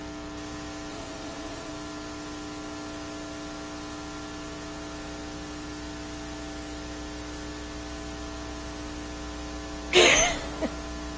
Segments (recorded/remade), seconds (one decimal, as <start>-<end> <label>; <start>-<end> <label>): 0.0-0.9 recorded; 0.9-1.7 remade; 1.7-11.2 recorded